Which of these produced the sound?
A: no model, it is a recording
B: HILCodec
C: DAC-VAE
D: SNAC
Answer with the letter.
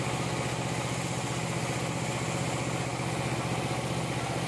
A